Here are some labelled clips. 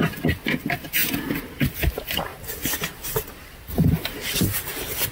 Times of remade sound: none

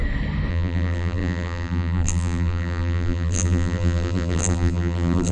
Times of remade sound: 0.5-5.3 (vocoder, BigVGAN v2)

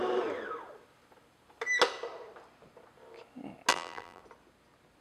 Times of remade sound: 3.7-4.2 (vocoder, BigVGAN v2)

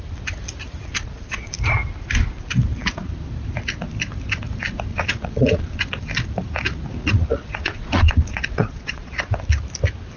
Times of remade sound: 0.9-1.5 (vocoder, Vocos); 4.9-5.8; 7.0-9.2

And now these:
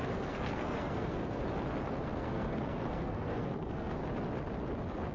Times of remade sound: 0.0-1.4 (codec, SNAC); 2.0-4.0

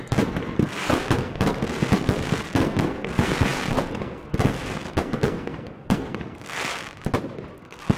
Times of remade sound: 0.0-6.8 (codec, SNAC); 7.6-8.0